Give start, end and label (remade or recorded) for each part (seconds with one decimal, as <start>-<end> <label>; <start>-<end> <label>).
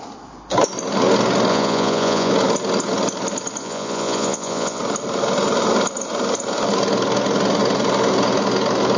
0.0-1.5 recorded; 1.5-2.3 remade; 2.3-3.6 recorded; 3.6-4.8 remade; 4.8-9.0 recorded